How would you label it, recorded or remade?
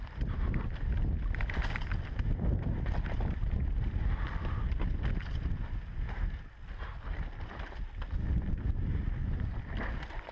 recorded